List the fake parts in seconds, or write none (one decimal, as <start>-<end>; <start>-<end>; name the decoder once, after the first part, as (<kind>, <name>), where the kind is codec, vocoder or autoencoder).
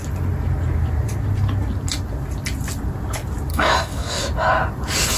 3.5-4.2 (codec, DAC)